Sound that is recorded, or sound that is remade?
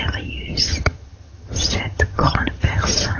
remade